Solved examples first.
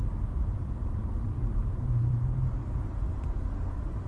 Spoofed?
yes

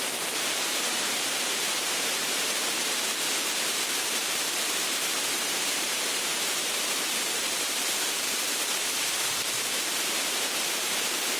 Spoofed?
yes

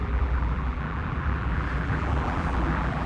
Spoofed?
yes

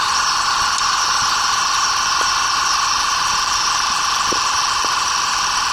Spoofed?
no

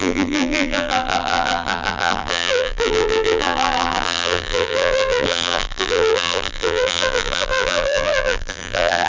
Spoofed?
yes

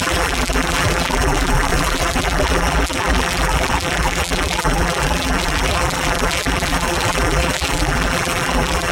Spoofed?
yes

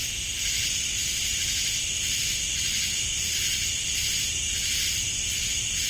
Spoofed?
no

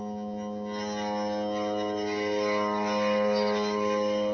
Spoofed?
no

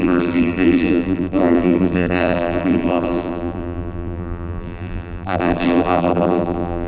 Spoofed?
yes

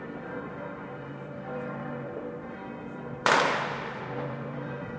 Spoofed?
yes